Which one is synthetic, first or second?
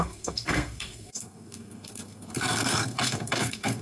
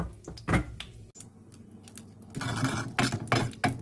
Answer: first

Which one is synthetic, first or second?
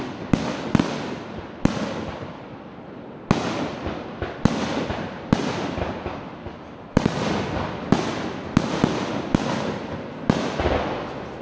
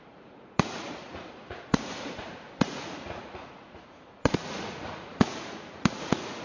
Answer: second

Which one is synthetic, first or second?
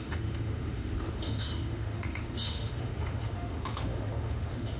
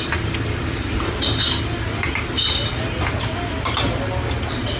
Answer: first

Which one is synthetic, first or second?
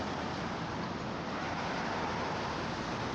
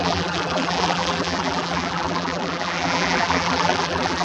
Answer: second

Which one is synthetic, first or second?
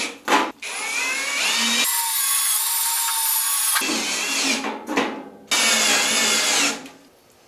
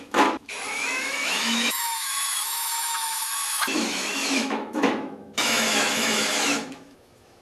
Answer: second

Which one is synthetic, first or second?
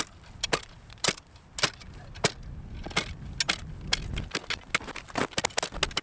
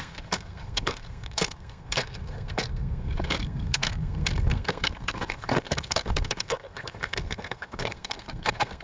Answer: second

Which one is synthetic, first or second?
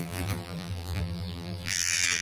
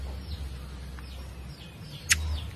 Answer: first